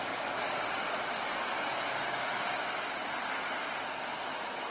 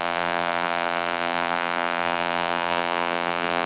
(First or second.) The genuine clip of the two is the first